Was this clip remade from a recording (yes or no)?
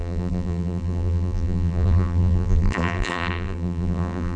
yes